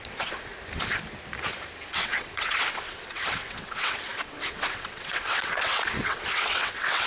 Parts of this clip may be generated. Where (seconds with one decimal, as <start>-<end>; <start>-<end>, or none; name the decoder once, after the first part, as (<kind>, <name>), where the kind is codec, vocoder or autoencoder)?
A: 0.0-0.5 (vocoder, WaveNeXt); 1.9-7.1